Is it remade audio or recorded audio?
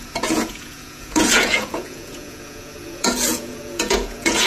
remade